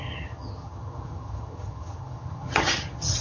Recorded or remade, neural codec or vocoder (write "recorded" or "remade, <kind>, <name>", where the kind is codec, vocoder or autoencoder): remade, vocoder, HiFi-GAN